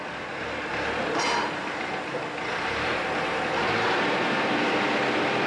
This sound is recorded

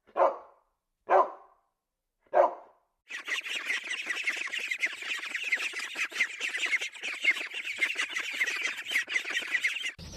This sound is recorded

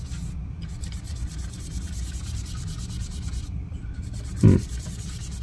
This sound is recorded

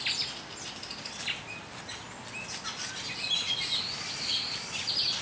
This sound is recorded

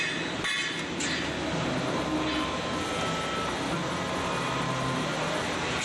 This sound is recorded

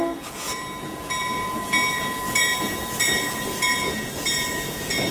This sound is remade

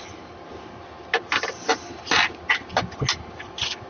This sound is recorded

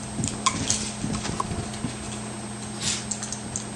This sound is recorded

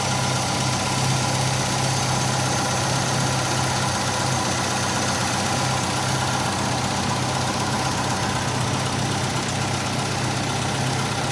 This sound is recorded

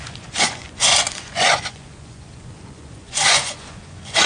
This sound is remade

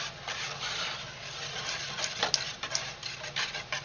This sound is recorded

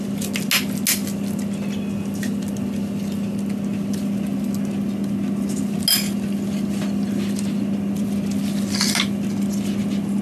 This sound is recorded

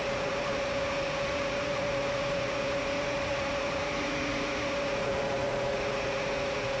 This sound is remade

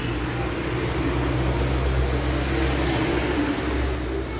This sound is recorded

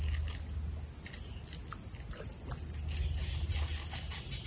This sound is recorded